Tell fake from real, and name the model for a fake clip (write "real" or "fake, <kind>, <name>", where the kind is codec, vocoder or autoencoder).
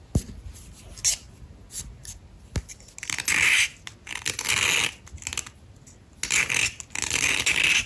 real